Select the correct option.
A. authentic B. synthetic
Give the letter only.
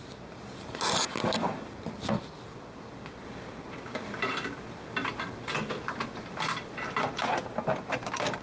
A